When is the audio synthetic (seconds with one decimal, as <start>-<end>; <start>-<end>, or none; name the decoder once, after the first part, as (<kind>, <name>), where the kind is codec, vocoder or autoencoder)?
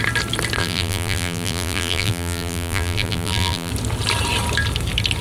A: 0.6-3.7 (vocoder, BigVGAN v2)